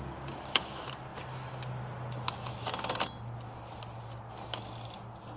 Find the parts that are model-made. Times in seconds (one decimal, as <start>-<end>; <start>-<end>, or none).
none